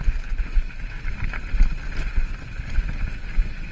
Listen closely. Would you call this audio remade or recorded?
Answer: recorded